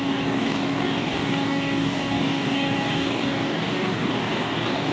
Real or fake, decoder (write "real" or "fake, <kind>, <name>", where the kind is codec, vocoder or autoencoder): fake, codec, DAC